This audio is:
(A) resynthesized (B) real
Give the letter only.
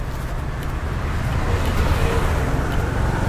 B